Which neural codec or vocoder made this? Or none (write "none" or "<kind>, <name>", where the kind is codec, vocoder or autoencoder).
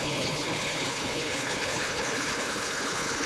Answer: codec, HILCodec